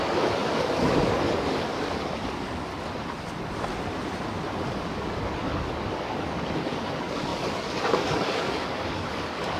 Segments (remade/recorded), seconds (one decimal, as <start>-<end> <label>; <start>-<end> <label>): 0.0-2.7 remade; 2.7-4.7 recorded; 4.7-9.6 remade